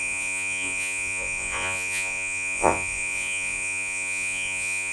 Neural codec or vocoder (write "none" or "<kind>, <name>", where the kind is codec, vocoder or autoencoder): vocoder, Vocos